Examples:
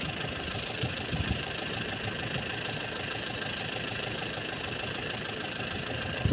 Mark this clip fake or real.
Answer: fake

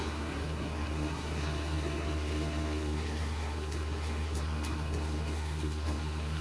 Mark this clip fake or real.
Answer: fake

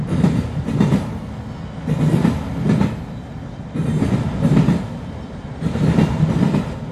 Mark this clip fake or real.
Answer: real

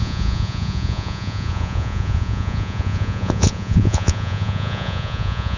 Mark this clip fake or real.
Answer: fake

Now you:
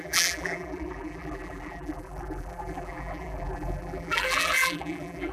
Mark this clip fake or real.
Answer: fake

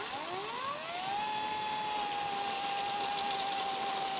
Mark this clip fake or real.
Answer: real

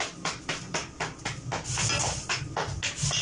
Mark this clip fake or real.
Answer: real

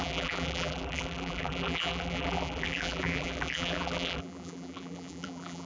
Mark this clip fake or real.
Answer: fake